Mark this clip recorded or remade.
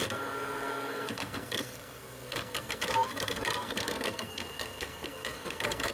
remade